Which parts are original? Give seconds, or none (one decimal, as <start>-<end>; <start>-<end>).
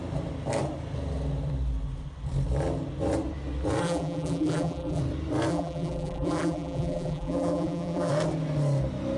0.0-3.8; 5.0-5.5; 8.1-9.2